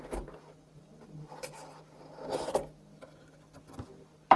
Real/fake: fake